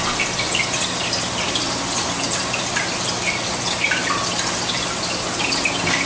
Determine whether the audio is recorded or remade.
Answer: recorded